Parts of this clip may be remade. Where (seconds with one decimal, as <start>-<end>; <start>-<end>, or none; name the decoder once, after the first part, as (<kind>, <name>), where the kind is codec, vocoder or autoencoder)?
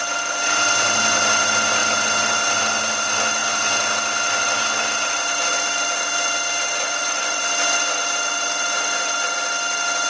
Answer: 6.8-7.4 (vocoder, Vocos)